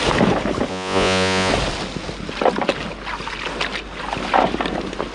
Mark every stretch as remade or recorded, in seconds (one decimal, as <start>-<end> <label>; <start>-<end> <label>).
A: 0.0-0.7 recorded; 0.7-1.5 remade; 1.5-5.1 recorded